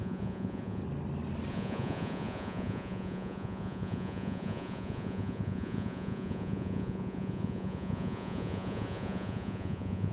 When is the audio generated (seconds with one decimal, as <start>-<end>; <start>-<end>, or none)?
0.0-0.8; 1.5-10.1